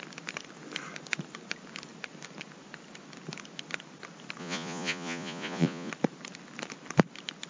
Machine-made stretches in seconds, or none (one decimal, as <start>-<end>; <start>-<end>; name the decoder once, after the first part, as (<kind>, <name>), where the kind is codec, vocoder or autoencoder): 4.4-5.9 (vocoder, Vocos)